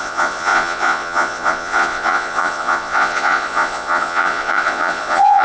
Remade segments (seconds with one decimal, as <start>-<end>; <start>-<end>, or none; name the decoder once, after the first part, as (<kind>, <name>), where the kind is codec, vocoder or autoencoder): 0.0-5.4 (vocoder, Vocos)